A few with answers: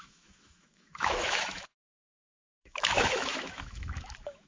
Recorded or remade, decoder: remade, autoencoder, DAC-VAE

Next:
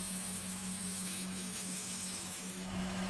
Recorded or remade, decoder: remade, autoencoder, DAC-VAE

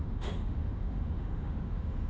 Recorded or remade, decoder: remade, autoencoder, DAC-VAE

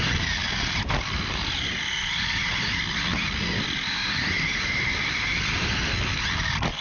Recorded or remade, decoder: recorded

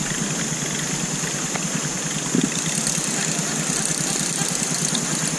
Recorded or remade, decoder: recorded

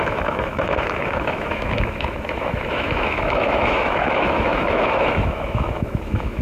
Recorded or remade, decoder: remade, autoencoder, DAC-VAE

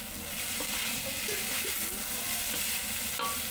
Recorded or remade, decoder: recorded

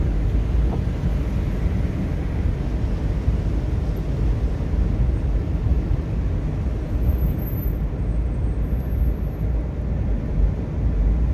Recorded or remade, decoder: recorded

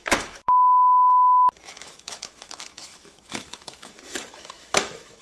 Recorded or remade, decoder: remade, autoencoder, DAC-VAE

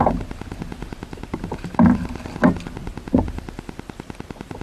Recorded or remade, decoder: recorded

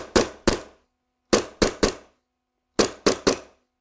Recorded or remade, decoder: recorded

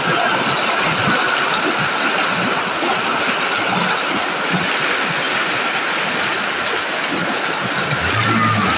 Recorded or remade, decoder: recorded